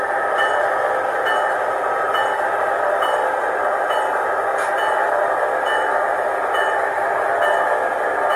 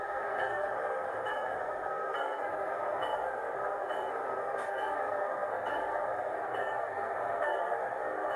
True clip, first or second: first